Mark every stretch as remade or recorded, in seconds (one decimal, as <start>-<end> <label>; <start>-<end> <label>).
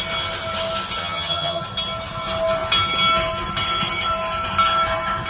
0.0-1.0 recorded; 1.0-1.6 remade; 1.6-5.3 recorded